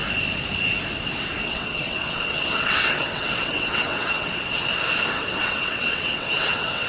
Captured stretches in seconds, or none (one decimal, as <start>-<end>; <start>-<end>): 0.0-1.4; 4.7-5.4